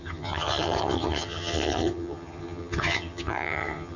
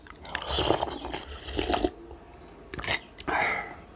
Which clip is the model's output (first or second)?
first